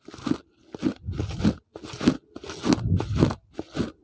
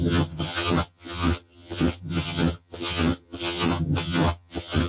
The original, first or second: first